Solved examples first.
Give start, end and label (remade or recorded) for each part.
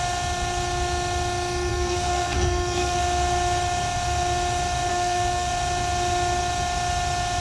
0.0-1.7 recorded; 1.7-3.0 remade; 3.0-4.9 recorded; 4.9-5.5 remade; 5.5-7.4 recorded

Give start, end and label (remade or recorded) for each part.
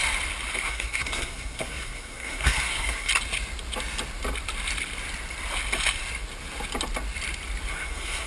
0.0-0.6 recorded; 0.6-3.1 remade; 3.1-7.7 recorded; 7.7-8.3 remade